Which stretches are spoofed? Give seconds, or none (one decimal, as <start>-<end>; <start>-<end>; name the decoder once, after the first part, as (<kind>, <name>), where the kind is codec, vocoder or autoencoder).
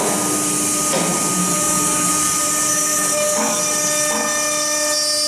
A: 1.4-2.1 (codec, DAC); 2.7-3.6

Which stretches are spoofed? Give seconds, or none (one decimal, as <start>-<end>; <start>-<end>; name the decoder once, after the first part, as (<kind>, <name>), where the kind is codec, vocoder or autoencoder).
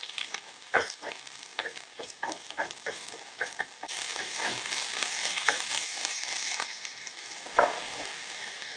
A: 0.0-8.8 (codec, DAC)